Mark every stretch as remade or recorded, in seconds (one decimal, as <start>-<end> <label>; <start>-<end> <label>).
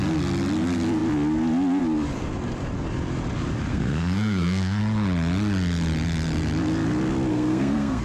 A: 0.0-3.7 recorded; 3.7-4.8 remade; 4.8-7.3 recorded; 7.3-8.0 remade